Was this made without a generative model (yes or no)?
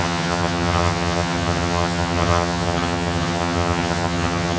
no